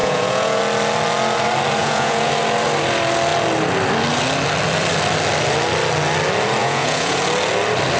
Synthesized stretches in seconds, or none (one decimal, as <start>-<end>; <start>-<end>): 0.0-0.6; 1.8-2.3; 6.6-7.2